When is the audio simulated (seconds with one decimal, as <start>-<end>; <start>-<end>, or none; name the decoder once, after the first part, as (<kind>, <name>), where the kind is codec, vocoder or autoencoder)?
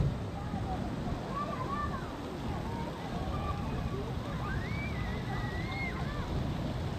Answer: none